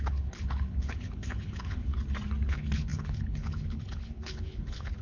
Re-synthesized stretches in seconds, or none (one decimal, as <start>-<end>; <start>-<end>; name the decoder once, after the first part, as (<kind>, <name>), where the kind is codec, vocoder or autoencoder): 0.0-1.9 (codec, HILCodec); 2.5-5.0